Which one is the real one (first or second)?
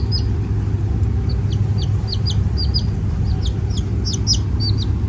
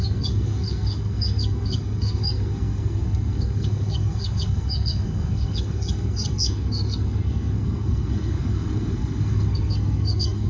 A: first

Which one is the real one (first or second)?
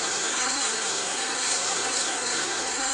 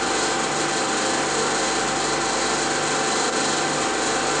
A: second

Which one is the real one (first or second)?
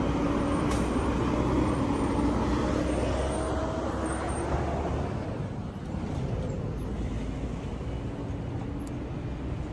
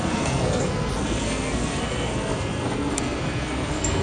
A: first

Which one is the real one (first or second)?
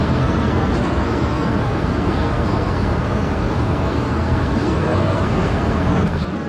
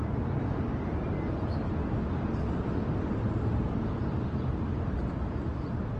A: second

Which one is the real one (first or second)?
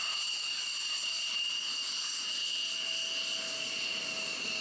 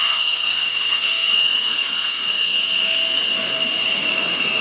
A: first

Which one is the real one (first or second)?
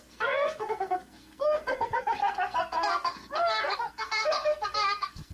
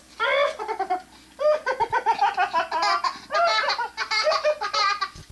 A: second